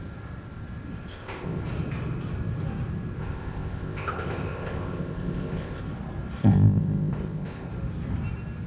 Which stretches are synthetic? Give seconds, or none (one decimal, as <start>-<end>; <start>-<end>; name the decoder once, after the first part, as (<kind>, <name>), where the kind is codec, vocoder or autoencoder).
1.1-1.6 (codec, ZipCodec); 3.2-5.8; 6.4-7.7